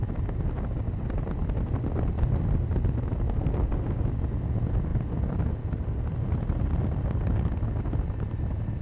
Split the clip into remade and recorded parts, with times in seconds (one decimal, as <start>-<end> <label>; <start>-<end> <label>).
0.0-8.8 recorded